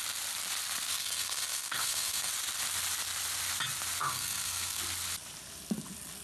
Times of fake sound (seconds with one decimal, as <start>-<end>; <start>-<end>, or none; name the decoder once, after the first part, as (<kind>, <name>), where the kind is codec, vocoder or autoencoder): 0.9-2.3 (codec, SNAC); 4.0-4.8